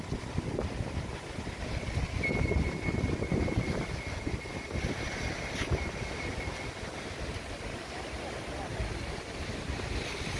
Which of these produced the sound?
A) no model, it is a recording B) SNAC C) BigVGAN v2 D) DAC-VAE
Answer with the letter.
A